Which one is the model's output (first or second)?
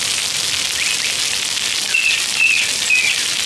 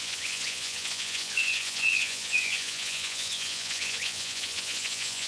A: second